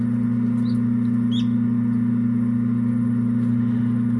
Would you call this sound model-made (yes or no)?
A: no